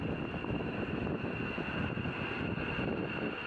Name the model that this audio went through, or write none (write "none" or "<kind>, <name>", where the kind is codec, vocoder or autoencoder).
none